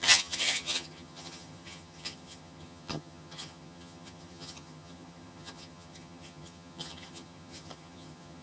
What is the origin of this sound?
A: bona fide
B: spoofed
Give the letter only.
B